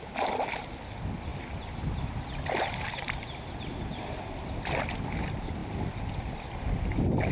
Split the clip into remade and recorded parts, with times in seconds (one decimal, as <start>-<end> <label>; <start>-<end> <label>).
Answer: 0.0-7.3 recorded